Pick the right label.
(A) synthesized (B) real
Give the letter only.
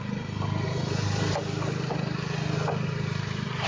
B